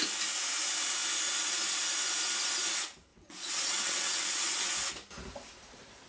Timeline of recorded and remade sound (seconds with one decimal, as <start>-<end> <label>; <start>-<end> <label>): 0.0-3.1 recorded; 3.1-4.7 remade; 4.7-6.1 recorded

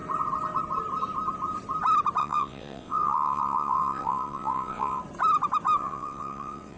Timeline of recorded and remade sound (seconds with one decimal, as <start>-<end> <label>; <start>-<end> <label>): 0.0-2.2 recorded; 2.2-5.0 remade; 5.0-5.8 recorded; 5.8-6.8 remade

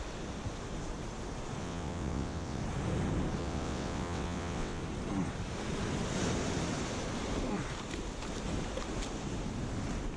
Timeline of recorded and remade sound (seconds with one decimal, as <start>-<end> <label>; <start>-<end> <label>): 0.0-1.6 recorded; 1.6-2.6 remade; 2.6-3.4 recorded; 3.4-4.8 remade; 4.8-10.2 recorded

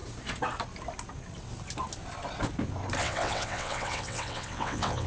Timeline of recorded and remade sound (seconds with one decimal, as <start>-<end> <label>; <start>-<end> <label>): 0.0-3.0 recorded; 3.0-5.1 remade

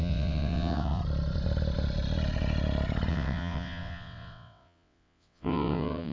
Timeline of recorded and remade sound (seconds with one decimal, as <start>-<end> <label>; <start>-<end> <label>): 0.0-1.0 remade; 1.0-3.1 recorded; 3.1-6.1 remade

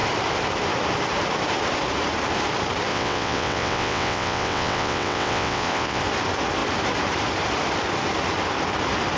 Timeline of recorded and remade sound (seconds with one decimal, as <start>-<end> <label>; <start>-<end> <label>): 0.0-2.9 recorded; 2.9-6.0 remade; 6.0-9.2 recorded

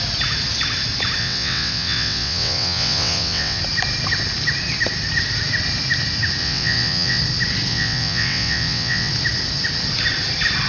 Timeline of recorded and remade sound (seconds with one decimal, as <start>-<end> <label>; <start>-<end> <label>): 0.0-1.2 recorded; 1.2-3.6 remade; 3.6-6.4 recorded; 6.4-7.2 remade; 7.2-7.7 recorded; 7.7-9.1 remade; 9.1-10.7 recorded